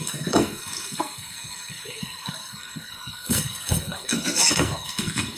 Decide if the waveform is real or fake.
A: fake